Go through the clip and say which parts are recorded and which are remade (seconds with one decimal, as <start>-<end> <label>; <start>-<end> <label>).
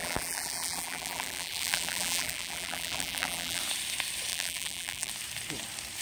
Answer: 0.0-3.6 remade; 3.6-4.3 recorded; 4.3-5.1 remade; 5.1-6.0 recorded